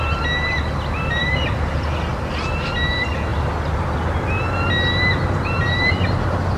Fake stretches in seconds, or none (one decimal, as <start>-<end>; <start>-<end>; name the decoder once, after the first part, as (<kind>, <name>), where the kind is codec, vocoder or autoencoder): none